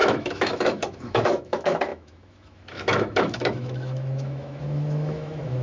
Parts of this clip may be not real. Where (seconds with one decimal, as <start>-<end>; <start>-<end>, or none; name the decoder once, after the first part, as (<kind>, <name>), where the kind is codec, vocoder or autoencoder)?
0.0-5.6 (autoencoder, DAC-VAE)